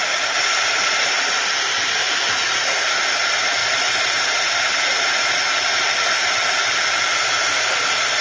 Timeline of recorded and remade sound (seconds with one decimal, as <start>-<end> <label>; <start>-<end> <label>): 0.0-3.6 recorded; 3.6-4.3 remade; 4.3-5.7 recorded; 5.7-7.0 remade; 7.0-8.2 recorded